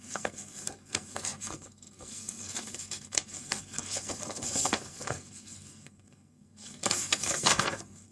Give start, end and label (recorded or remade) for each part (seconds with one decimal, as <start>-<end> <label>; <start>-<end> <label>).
0.0-8.1 remade